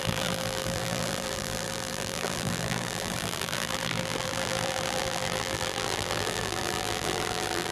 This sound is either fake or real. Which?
fake